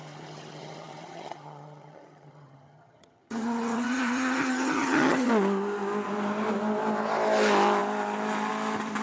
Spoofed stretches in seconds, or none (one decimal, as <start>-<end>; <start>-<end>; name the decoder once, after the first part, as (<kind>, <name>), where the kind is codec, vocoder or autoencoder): 0.0-5.3 (vocoder, HiFi-GAN)